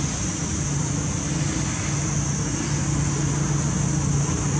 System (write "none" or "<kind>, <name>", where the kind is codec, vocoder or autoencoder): none